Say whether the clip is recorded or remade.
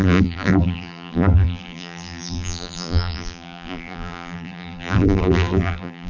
remade